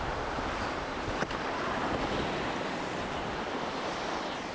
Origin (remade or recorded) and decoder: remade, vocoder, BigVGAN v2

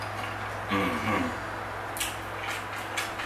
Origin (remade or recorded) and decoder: recorded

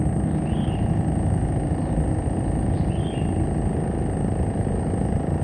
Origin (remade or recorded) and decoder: recorded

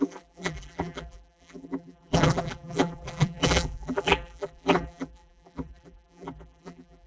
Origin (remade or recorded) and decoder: remade, vocoder, BigVGAN v2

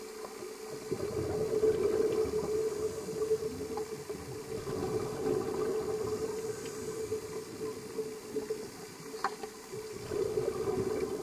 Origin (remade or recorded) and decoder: recorded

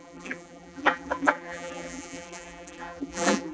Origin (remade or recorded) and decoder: remade, vocoder, BigVGAN v2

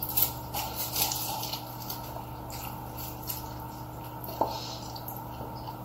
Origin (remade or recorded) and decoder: recorded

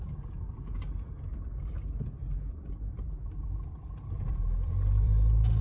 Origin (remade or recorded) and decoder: remade, vocoder, BigVGAN v2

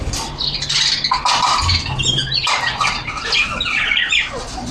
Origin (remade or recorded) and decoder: recorded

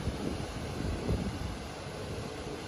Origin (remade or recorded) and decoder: remade, vocoder, BigVGAN v2